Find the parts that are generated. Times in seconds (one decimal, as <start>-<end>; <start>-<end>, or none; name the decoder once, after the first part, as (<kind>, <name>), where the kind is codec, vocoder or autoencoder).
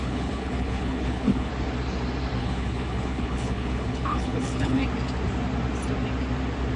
0.0-1.5 (codec, HILCodec); 2.4-4.8